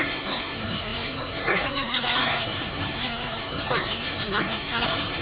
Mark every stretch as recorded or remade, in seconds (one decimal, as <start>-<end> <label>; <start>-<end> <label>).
0.0-5.2 remade